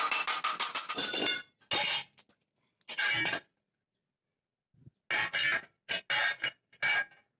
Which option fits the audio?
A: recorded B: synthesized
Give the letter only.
A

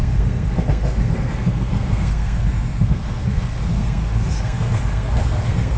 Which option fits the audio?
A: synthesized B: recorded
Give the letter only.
A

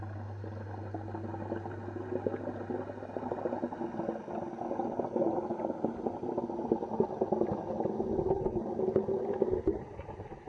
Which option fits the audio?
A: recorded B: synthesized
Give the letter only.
A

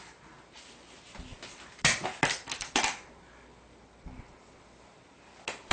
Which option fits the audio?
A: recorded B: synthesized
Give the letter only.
A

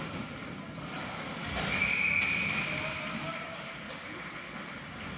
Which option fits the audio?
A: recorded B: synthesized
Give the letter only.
A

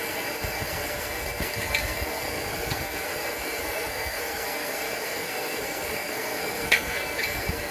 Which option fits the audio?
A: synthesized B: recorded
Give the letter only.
A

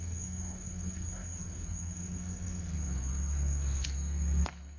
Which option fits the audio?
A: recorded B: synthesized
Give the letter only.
B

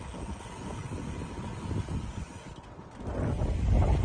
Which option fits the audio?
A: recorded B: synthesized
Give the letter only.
A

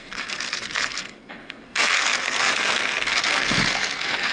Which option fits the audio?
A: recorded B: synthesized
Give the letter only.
B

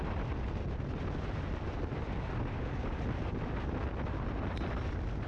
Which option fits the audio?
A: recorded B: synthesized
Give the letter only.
A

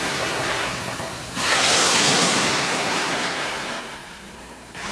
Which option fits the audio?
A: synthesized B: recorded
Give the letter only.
A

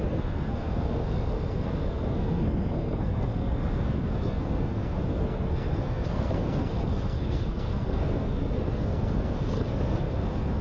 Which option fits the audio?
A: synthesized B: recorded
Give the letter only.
A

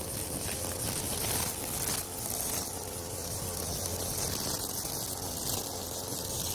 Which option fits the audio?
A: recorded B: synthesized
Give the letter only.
A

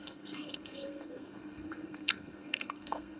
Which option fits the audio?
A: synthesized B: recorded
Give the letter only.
A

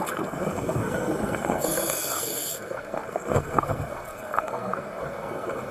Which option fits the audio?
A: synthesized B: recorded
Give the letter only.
A